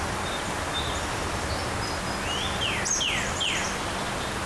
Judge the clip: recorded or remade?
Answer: recorded